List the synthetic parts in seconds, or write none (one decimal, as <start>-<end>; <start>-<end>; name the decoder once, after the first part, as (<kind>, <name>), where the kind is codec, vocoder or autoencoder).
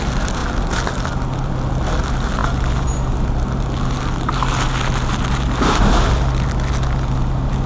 none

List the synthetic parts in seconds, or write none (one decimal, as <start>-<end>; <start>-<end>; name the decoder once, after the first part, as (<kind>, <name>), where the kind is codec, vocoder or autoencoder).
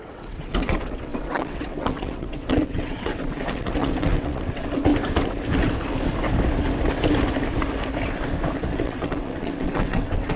0.0-4.9 (vocoder, WaveNeXt); 8.7-10.4